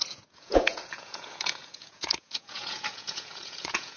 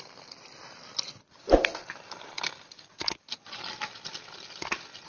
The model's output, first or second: first